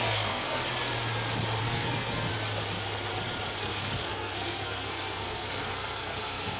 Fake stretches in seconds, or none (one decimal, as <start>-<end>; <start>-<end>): 0.0-0.6; 1.6-2.3; 3.6-6.6